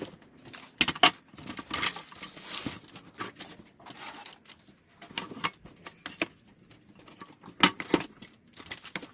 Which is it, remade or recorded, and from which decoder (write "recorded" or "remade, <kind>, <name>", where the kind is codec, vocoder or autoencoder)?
recorded